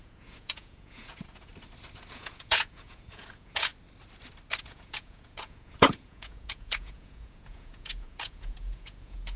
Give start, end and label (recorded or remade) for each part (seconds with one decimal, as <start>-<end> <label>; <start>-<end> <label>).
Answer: 0.0-1.5 remade; 1.5-2.1 recorded; 2.1-3.7 remade; 3.7-4.6 recorded; 4.6-9.4 remade